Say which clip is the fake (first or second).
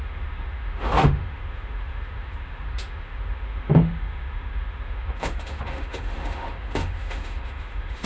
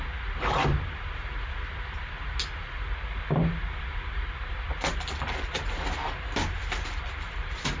first